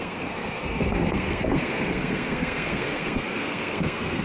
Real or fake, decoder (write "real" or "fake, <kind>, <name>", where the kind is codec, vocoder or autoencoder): fake, codec, SNAC